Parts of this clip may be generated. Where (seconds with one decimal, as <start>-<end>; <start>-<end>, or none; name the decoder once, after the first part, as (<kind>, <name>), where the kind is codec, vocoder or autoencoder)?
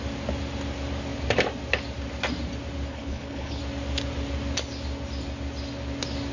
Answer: 2.9-3.6 (codec, HILCodec)